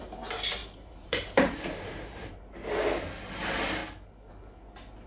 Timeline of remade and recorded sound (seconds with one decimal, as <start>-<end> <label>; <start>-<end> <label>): 0.0-0.6 recorded; 0.6-2.3 remade; 2.3-5.1 recorded